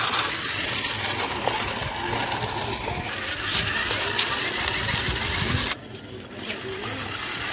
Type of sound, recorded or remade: recorded